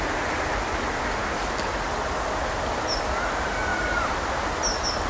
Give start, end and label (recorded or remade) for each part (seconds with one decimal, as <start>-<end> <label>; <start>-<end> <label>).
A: 0.0-3.7 recorded; 3.7-4.4 remade; 4.4-5.1 recorded